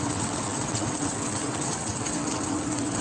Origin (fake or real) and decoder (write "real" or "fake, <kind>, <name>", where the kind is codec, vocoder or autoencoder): fake, vocoder, WaveNeXt